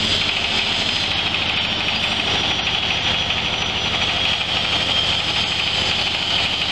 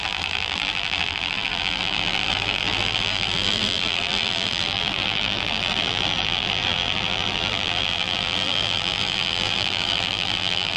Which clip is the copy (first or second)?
second